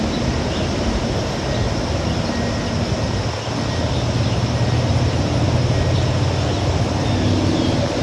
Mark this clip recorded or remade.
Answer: recorded